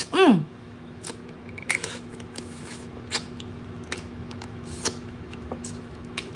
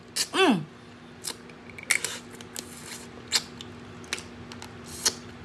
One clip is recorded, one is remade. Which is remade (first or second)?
first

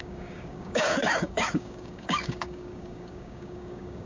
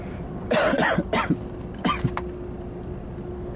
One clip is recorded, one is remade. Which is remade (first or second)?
first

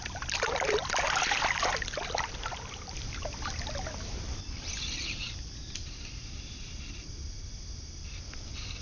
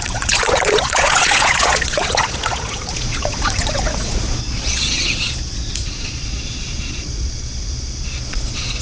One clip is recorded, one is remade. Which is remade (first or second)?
second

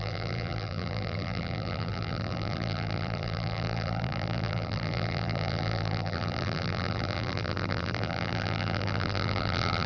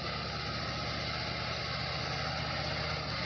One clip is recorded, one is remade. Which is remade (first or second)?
first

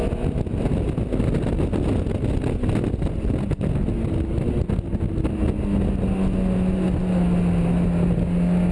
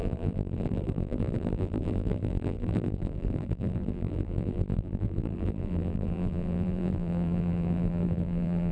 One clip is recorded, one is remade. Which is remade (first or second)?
second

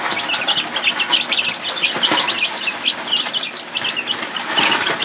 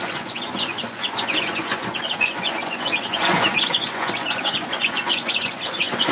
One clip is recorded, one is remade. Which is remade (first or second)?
second